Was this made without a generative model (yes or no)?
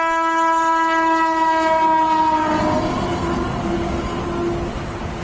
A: yes